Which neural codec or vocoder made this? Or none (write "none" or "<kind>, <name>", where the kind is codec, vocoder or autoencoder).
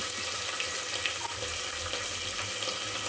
none